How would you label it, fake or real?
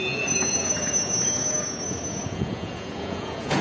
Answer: fake